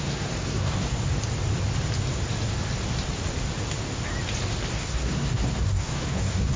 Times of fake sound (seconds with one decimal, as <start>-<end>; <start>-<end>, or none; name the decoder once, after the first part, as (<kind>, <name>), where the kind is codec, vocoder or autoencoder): 0.0-1.0 (codec, SNAC); 4.7-6.6

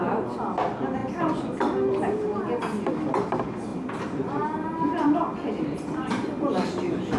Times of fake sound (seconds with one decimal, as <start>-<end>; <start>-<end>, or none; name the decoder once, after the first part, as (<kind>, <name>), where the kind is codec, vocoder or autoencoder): 3.7-6.7 (vocoder, BigVGAN v2)

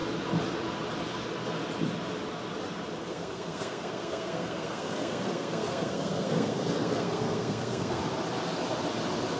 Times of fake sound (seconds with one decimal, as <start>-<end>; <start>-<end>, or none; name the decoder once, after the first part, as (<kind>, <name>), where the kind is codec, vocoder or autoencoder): 3.0-8.0 (codec, SNAC)

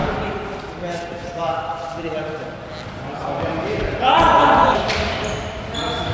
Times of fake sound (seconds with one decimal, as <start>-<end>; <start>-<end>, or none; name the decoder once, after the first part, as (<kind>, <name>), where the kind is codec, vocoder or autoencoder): 0.0-0.6 (vocoder, BigVGAN v2); 1.2-2.1; 3.2-4.9

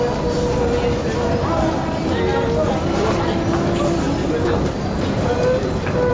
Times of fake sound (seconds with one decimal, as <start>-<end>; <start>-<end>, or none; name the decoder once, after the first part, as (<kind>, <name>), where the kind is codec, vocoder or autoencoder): none

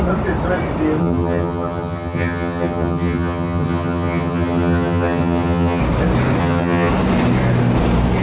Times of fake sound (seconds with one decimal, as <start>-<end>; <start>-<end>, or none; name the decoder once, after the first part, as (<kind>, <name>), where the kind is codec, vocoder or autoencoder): 1.0-5.8 (vocoder, HiFi-GAN); 6.4-6.9

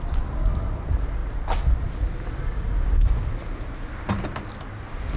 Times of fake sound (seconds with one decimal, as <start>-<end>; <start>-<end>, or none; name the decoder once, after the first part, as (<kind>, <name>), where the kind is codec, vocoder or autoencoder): none

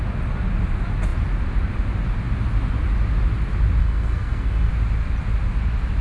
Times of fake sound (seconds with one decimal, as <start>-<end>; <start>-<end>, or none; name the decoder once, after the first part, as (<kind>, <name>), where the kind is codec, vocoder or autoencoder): 3.8-4.7 (codec, SNAC)